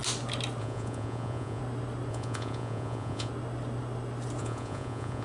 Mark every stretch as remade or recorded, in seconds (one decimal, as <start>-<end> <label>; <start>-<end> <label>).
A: 0.0-0.6 recorded; 0.6-1.6 remade; 1.6-2.1 recorded; 2.1-3.3 remade; 3.3-4.4 recorded; 4.4-5.2 remade